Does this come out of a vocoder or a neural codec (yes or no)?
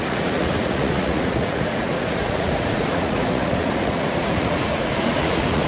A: yes